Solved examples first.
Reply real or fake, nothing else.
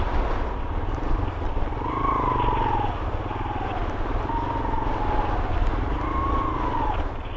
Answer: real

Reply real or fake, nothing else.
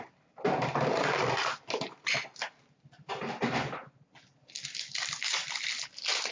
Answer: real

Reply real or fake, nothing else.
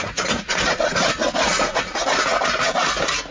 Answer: fake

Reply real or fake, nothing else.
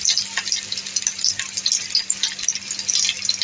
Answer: real